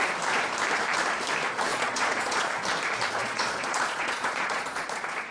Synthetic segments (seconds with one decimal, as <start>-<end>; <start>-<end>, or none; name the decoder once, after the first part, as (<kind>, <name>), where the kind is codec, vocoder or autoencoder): 1.7-2.5 (vocoder, Vocos); 3.2-5.3